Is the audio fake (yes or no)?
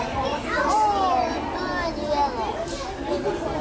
no